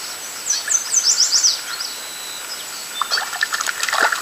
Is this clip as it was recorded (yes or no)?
yes